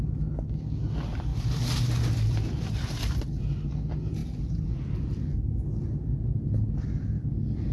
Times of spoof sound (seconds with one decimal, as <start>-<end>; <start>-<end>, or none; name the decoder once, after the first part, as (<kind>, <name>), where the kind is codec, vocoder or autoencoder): 1.3-3.4 (vocoder, BigVGAN v2)